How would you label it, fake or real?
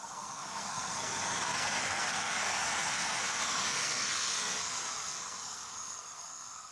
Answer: fake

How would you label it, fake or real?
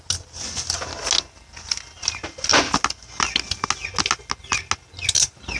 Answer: real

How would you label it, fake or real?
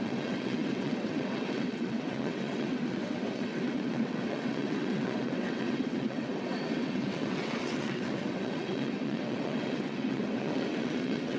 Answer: fake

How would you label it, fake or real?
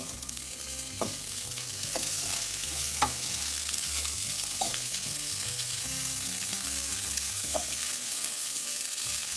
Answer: fake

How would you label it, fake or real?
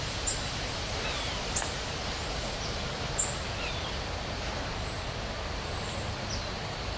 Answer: real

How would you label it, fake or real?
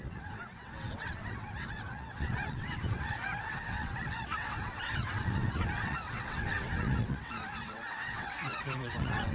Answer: fake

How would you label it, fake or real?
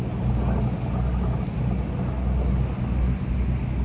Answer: real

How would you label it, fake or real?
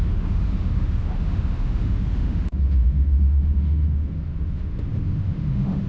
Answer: fake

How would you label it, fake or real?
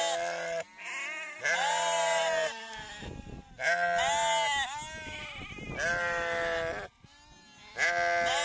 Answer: real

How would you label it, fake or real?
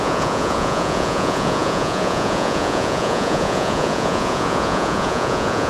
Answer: fake